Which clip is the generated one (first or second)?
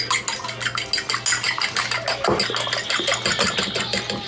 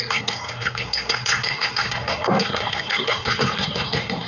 second